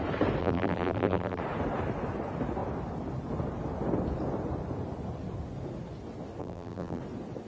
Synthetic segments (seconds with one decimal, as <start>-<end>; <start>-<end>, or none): 0.4-1.4; 6.4-7.0